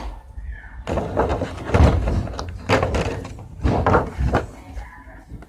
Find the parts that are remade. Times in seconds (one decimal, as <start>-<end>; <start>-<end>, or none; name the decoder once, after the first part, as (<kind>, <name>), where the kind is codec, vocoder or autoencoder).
none